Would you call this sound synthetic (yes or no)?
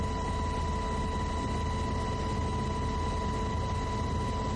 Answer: no